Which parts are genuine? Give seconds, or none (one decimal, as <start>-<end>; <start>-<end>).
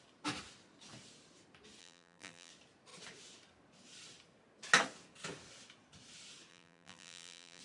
0.0-1.8; 2.5-6.5